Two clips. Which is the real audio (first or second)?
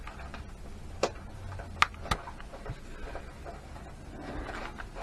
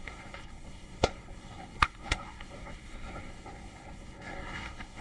first